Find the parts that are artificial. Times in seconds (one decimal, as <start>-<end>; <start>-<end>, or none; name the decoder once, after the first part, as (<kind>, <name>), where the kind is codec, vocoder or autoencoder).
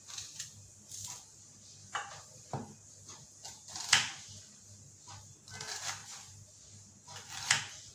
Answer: 1.8-2.6 (vocoder, BigVGAN v2); 6.0-6.7